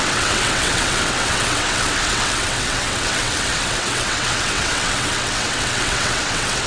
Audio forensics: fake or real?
fake